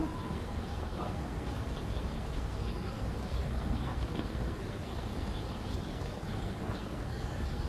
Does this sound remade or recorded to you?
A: remade